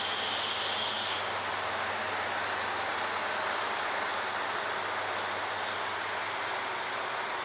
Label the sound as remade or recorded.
recorded